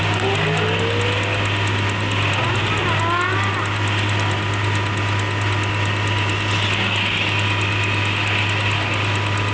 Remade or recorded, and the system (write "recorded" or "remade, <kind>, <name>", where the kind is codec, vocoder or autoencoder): recorded